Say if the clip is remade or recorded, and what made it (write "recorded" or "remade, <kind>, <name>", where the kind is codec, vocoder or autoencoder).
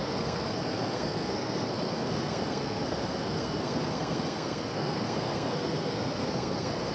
remade, codec, SNAC